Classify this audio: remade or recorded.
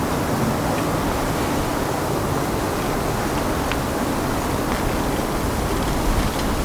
recorded